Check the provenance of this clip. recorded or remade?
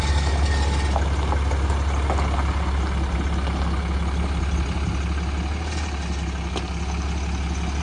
recorded